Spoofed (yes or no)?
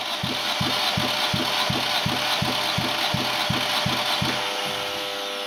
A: no